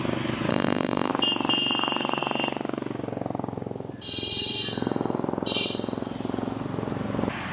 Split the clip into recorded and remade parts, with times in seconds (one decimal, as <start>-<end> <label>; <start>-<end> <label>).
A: 0.0-0.5 recorded; 0.5-1.1 remade; 1.1-7.5 recorded